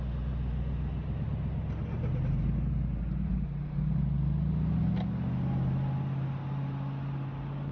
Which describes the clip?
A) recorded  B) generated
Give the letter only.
A